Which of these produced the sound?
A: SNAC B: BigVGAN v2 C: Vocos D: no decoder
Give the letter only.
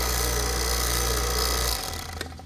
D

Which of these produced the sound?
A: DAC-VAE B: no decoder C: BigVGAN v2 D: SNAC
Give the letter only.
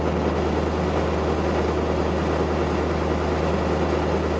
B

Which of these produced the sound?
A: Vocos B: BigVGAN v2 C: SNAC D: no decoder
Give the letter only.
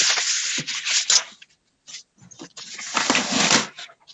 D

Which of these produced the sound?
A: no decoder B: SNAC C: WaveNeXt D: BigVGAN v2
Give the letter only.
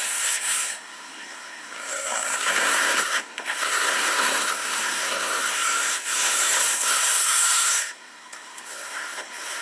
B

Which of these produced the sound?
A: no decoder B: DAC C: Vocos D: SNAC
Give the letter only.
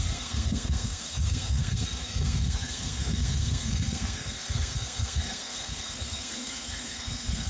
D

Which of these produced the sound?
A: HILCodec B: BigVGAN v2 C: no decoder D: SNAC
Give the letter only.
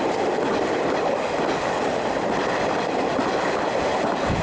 C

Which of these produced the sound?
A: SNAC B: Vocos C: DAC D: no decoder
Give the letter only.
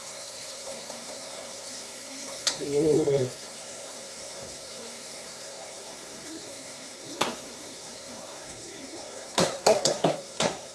A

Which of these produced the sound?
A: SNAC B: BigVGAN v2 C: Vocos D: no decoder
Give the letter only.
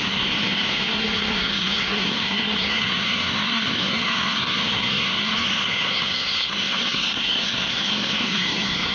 A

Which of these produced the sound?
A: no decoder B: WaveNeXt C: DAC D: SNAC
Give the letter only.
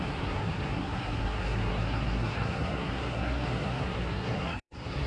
D